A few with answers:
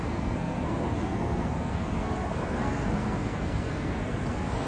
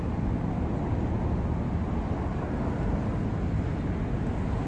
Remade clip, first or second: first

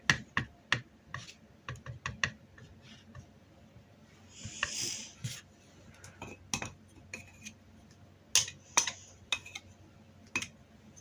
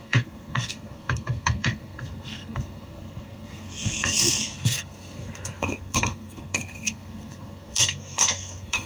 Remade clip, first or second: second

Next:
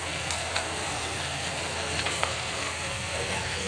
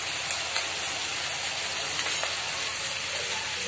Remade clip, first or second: first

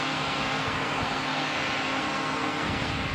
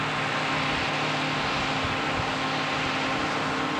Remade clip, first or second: first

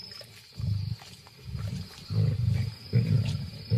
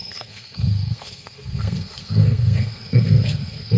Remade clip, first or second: second